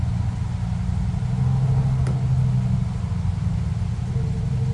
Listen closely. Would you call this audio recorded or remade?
recorded